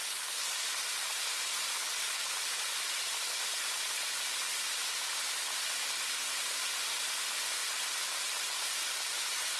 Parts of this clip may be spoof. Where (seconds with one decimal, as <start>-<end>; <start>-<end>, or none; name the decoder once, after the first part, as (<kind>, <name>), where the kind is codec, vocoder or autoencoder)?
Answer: none